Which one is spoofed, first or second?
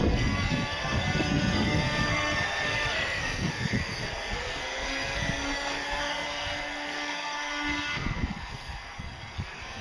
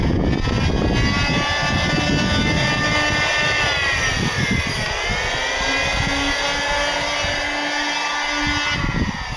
first